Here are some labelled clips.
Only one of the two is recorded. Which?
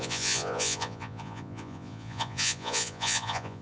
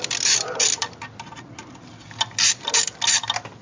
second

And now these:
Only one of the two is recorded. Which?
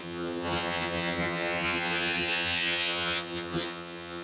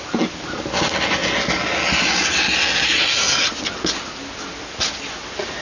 second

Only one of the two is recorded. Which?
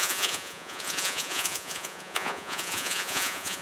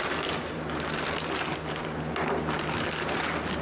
second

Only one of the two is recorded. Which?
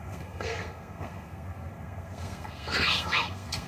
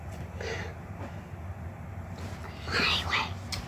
second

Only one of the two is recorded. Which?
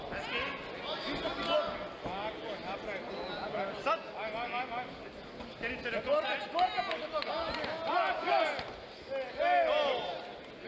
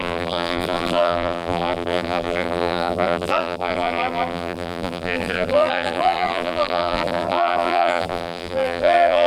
first